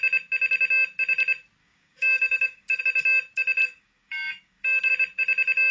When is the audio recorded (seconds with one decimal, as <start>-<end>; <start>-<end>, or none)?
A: 0.0-1.6; 2.8-3.6; 4.9-5.7